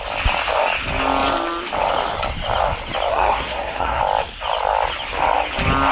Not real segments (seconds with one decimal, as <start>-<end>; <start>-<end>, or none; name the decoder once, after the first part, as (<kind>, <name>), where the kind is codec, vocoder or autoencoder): 3.1-4.0 (codec, SNAC)